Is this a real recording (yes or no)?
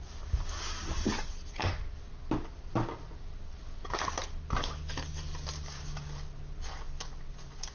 yes